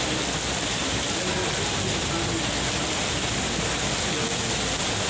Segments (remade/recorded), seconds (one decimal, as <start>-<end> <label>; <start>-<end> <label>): 0.0-5.1 recorded